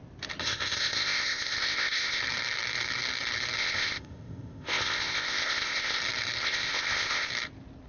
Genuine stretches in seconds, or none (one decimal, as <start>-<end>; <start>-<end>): 0.0-0.4; 2.2-3.6; 6.0-6.4; 7.3-7.9